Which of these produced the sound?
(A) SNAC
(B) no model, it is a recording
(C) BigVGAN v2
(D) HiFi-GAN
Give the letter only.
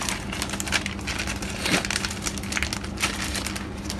B